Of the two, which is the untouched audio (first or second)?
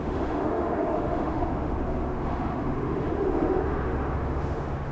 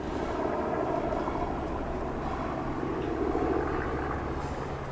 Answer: second